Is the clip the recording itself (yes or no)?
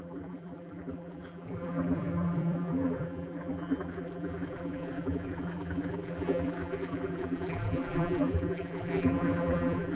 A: no